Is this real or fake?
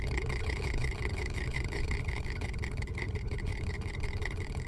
fake